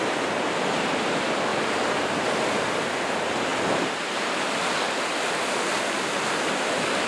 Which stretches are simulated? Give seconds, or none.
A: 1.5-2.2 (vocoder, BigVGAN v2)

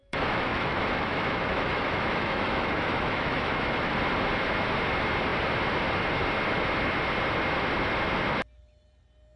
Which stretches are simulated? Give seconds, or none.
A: 0.0-3.9 (autoencoder, DAC-VAE)

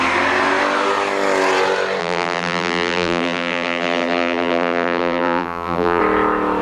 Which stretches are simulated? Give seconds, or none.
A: 2.0-6.0 (vocoder, BigVGAN v2)

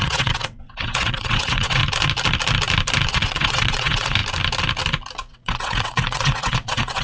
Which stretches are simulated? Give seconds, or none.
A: 0.0-1.8 (vocoder, WaveNeXt); 3.1-4.2; 5.3-7.0

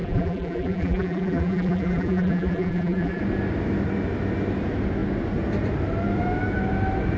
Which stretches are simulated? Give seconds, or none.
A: 0.0-3.2 (vocoder, BigVGAN v2)

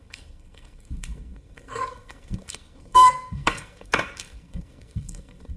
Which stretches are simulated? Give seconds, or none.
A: 0.0-5.6 (codec, SNAC)

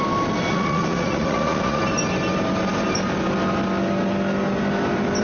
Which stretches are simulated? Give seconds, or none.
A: 0.5-1.8 (vocoder, Vocos)

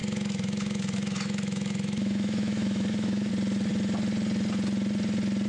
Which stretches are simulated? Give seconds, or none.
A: 0.0-3.3 (autoencoder, DAC-VAE)